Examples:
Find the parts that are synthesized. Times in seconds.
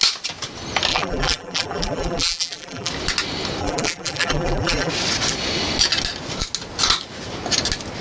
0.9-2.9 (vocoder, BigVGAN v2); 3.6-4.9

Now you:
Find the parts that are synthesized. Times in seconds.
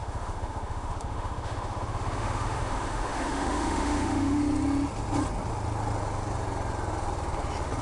0.0-4.4 (autoencoder, DAC-VAE)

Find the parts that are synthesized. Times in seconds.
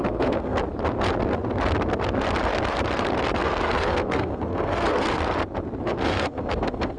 0.0-0.6 (codec, SNAC); 3.4-5.2; 5.8-7.0